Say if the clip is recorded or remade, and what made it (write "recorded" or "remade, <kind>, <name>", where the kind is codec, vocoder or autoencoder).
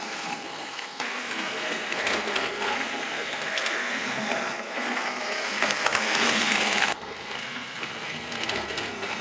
remade, codec, SNAC